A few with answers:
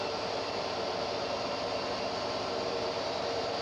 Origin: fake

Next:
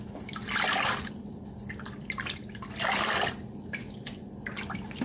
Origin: real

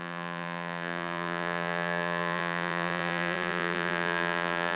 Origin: fake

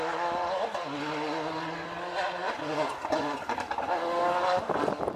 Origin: real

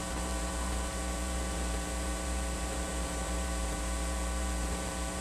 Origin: fake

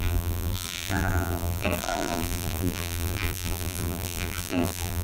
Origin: fake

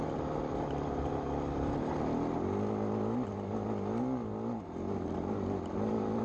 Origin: real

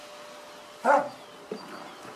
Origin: real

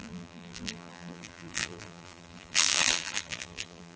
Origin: fake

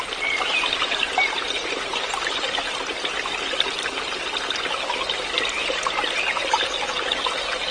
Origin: real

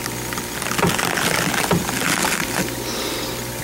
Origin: real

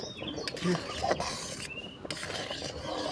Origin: real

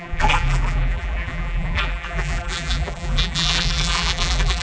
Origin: fake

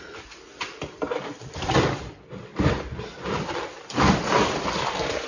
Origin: fake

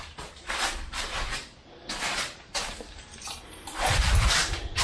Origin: fake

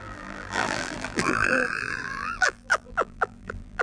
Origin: fake